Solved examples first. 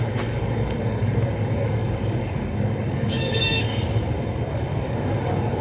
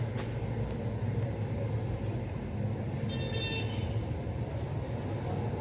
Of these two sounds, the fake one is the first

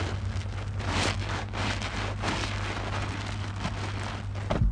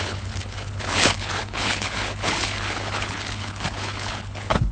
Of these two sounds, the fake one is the second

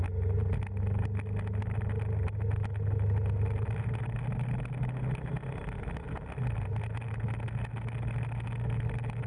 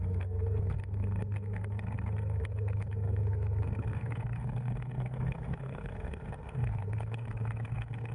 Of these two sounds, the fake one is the second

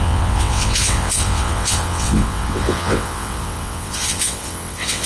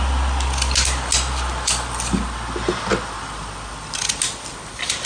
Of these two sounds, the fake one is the first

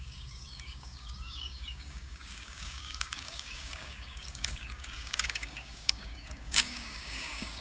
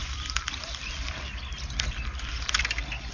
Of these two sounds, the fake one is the first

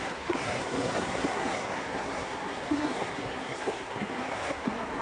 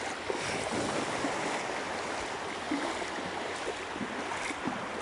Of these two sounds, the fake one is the first